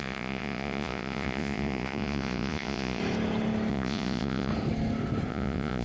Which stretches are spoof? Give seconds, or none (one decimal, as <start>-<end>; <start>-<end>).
0.0-3.0; 3.7-4.5; 5.3-5.8